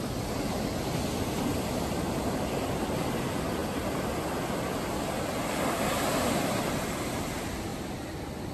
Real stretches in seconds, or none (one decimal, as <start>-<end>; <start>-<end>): 0.0-8.5